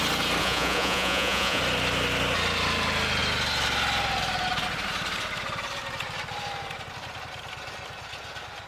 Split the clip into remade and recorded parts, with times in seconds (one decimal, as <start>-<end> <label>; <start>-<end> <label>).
0.0-0.4 recorded; 0.4-1.6 remade; 1.6-8.7 recorded

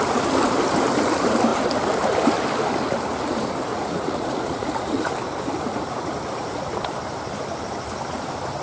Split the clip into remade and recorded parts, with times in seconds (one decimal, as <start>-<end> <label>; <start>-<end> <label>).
0.0-3.7 recorded; 3.7-5.1 remade; 5.1-5.7 recorded; 5.7-6.9 remade; 6.9-8.6 recorded